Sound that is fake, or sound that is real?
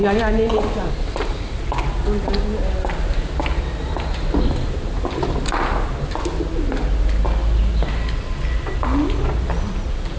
real